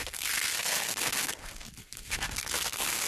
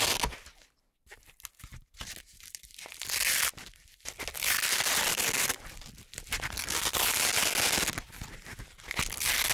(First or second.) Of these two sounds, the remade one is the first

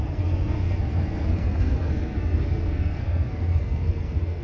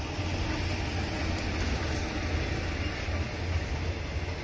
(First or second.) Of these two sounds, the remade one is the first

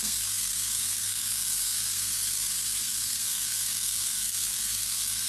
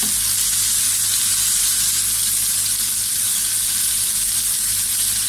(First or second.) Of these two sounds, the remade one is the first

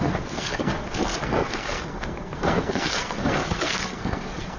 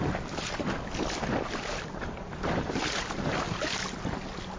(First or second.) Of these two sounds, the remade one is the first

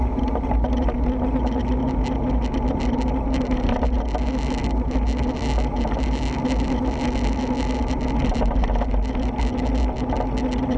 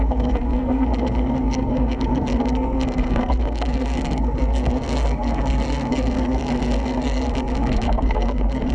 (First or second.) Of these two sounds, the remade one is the second